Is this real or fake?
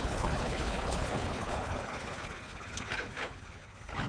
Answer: fake